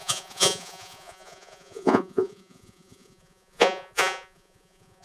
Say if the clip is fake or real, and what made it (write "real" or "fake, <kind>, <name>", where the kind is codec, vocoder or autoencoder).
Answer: fake, vocoder, Vocos